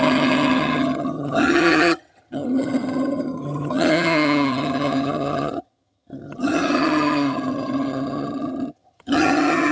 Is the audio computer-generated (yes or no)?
yes